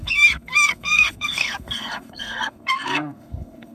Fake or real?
fake